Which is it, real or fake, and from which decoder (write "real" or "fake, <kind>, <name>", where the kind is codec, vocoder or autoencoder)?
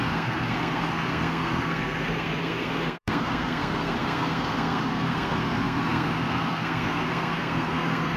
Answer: fake, codec, SNAC